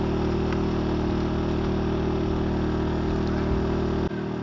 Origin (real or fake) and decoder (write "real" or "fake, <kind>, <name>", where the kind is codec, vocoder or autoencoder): real